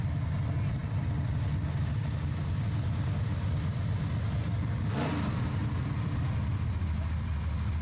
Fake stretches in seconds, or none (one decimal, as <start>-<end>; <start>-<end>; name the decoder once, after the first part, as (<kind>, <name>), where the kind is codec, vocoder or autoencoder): 0.0-5.6 (vocoder, BigVGAN v2); 6.8-7.8